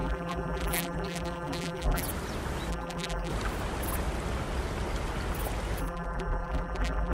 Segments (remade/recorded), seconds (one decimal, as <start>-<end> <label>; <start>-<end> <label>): 0.0-2.0 remade; 2.0-2.7 recorded; 2.7-3.3 remade; 3.3-5.8 recorded; 5.8-7.1 remade